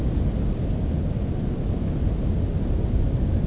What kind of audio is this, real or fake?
real